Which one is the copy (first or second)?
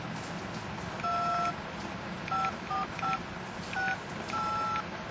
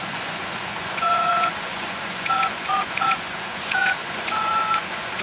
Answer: second